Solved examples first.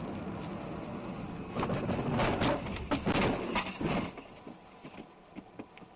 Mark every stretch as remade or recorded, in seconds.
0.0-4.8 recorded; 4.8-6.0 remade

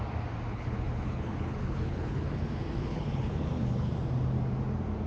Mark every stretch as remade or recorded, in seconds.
0.0-0.5 recorded; 0.5-2.4 remade; 2.4-2.8 recorded; 2.8-3.9 remade; 3.9-5.1 recorded

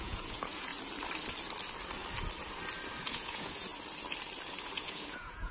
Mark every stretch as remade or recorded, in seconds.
0.0-0.7 remade; 0.7-3.0 recorded; 3.0-3.7 remade; 3.7-4.6 recorded; 4.6-5.5 remade

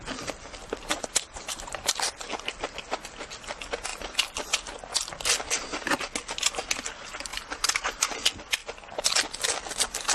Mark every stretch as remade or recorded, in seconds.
0.0-0.9 recorded; 0.9-1.9 remade; 1.9-7.3 recorded; 7.3-8.1 remade; 8.1-10.1 recorded

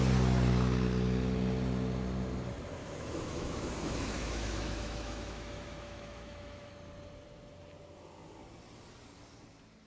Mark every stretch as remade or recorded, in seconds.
0.0-2.8 recorded; 2.8-6.7 remade; 6.7-9.9 recorded